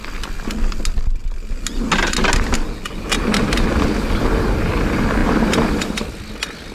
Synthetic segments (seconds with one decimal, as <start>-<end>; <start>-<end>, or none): 5.2-5.8